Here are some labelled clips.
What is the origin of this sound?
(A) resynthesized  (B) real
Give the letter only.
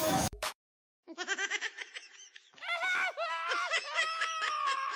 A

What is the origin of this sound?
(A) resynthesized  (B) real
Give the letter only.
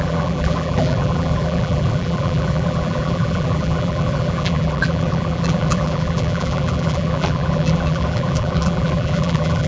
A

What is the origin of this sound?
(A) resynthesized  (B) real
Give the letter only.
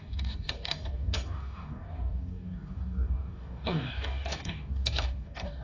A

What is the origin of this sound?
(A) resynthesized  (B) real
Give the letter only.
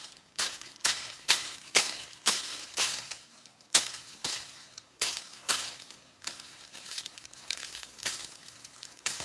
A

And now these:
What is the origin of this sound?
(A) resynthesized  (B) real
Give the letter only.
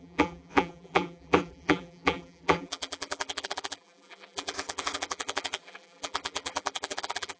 A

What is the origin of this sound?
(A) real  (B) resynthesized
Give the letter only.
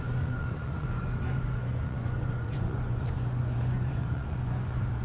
B